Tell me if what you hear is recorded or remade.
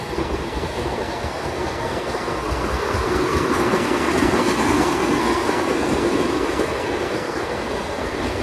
remade